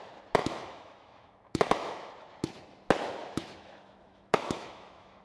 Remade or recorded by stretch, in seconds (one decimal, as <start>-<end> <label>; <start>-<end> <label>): 0.0-0.4 recorded; 0.4-2.1 remade; 2.1-3.2 recorded; 3.2-5.2 remade